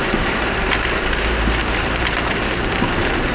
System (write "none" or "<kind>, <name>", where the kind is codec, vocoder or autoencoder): vocoder, BigVGAN v2